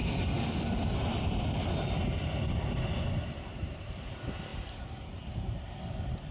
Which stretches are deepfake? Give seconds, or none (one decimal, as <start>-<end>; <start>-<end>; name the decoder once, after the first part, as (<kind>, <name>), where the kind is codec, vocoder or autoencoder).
3.5-4.1 (vocoder, BigVGAN v2); 4.5-5.7